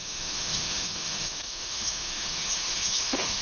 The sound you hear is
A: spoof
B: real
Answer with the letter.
A